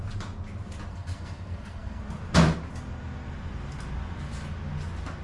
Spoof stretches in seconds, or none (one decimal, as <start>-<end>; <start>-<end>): 0.9-2.0